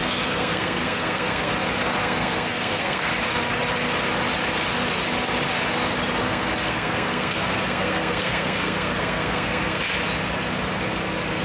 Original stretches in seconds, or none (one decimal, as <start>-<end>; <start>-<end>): 1.5-2.0; 3.1-6.2; 9.8-11.4